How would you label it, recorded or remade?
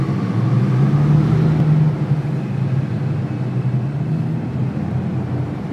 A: recorded